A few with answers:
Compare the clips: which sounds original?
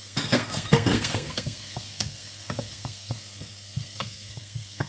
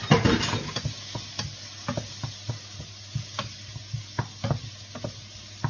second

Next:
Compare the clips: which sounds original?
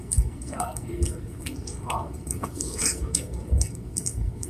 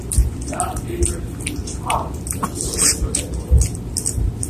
second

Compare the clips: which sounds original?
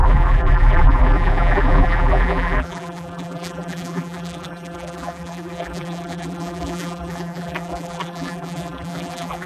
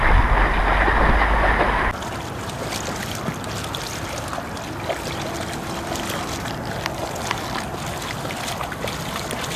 second